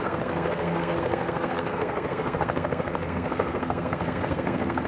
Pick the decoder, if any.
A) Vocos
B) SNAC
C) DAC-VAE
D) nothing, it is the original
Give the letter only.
B